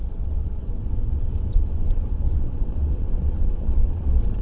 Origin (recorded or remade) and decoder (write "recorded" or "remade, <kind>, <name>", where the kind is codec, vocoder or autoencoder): remade, vocoder, WaveNeXt